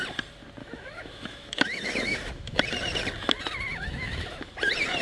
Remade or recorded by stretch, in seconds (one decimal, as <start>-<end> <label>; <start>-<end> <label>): 0.0-0.6 recorded; 0.6-2.6 remade; 2.6-3.7 recorded; 3.7-4.5 remade; 4.5-5.0 recorded